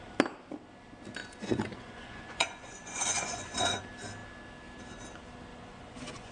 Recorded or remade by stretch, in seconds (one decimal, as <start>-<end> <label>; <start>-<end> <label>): 0.0-1.2 recorded; 1.2-3.8 remade; 3.8-5.5 recorded; 5.5-6.3 remade